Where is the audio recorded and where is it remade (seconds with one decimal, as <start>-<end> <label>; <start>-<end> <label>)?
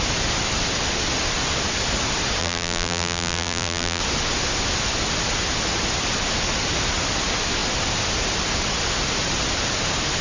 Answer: 0.0-2.4 recorded; 2.4-4.0 remade; 4.0-10.2 recorded